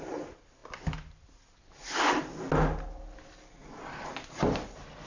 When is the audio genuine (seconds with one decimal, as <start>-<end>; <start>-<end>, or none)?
0.0-5.1